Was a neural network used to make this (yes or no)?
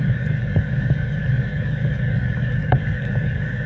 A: yes